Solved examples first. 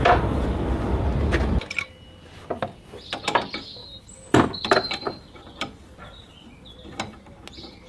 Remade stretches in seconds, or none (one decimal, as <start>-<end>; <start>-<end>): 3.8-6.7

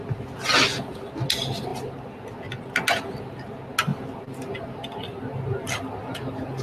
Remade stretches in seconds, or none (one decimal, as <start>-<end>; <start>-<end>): none

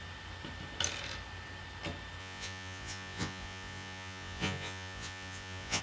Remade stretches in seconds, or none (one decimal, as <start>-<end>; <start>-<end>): 2.2-5.8

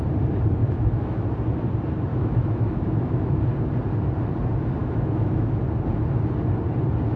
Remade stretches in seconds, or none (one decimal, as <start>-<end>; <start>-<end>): 0.6-1.2; 2.1-3.4; 4.8-5.6

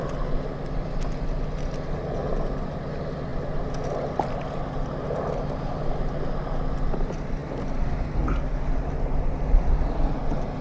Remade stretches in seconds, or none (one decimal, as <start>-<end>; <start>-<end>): none

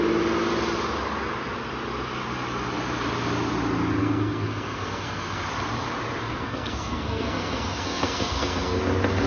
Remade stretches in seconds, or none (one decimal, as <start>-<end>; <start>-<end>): 4.0-5.4; 6.2-8.8

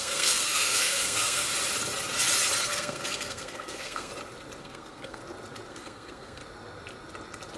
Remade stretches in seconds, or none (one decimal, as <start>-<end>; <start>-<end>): 0.0-1.5; 2.6-4.1; 4.6-5.2; 5.7-6.4

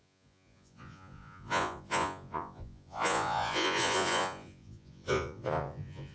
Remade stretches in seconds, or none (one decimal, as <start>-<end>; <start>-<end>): 0.0-6.1